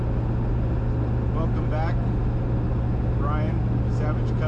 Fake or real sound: real